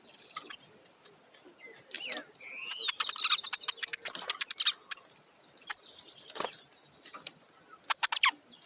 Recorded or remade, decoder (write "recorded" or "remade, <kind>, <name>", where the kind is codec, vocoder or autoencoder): recorded